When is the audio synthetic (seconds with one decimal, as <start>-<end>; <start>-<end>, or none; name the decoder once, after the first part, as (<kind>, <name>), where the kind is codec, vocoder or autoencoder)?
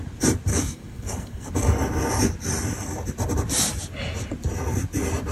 0.5-1.5 (codec, SNAC)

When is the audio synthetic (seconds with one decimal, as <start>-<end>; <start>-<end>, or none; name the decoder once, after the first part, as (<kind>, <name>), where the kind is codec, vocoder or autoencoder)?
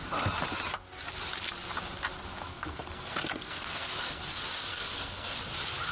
2.5-4.2 (codec, SNAC); 4.7-5.4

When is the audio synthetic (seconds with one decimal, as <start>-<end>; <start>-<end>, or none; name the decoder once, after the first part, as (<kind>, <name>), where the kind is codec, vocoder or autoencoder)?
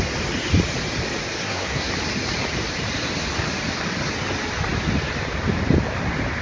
1.4-1.9 (codec, SNAC)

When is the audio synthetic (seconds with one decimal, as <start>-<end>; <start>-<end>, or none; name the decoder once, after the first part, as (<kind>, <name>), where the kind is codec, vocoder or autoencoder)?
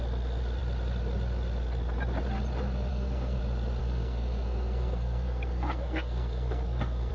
2.9-3.4 (codec, SNAC); 3.8-7.1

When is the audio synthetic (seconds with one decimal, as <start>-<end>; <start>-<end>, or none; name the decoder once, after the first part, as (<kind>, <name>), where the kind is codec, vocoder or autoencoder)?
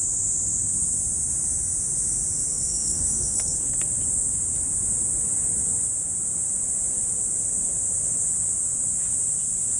2.5-3.9 (codec, SNAC)